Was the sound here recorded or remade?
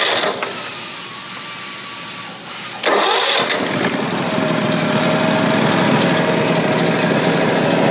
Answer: recorded